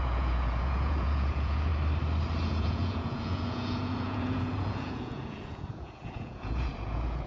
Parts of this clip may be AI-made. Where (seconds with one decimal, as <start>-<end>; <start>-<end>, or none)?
0.0-1.7; 2.5-7.3